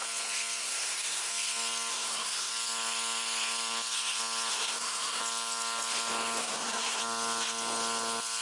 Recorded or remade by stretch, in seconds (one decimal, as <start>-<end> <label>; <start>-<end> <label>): 0.0-0.6 recorded; 0.6-1.3 remade; 1.3-1.9 recorded; 1.9-2.5 remade; 2.5-4.5 recorded; 4.5-5.2 remade; 5.2-6.4 recorded; 6.4-7.0 remade; 7.0-8.4 recorded